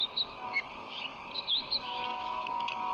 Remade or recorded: remade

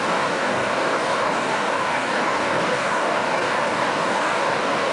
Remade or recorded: remade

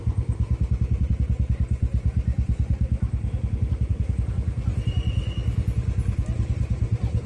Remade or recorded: recorded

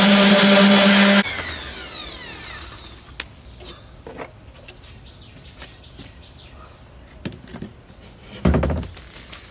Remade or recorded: recorded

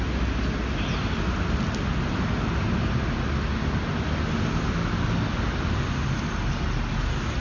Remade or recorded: recorded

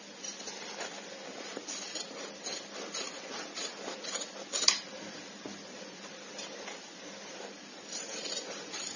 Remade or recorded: recorded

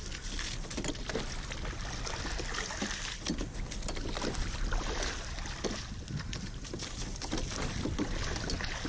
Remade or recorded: recorded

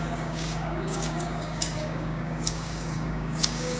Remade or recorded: remade